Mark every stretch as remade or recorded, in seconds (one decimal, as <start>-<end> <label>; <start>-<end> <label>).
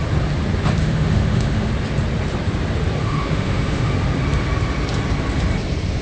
0.0-0.8 recorded; 0.8-1.7 remade; 1.7-3.0 recorded; 3.0-3.9 remade; 3.9-6.0 recorded